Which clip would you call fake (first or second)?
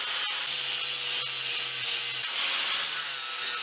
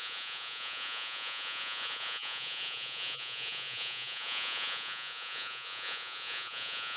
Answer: second